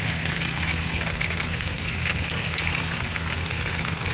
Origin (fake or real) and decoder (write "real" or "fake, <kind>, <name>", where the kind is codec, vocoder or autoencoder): fake, codec, SNAC